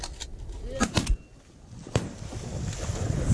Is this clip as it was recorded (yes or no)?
yes